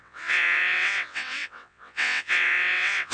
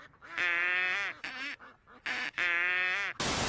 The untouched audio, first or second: second